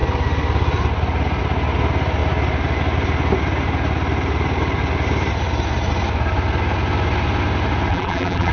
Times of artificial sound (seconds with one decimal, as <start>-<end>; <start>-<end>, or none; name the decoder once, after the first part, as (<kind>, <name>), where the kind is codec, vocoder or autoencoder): 7.9-8.5 (vocoder, BigVGAN v2)